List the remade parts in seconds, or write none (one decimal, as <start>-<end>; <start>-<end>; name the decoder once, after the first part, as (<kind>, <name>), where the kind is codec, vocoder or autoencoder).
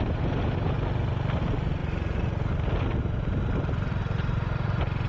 none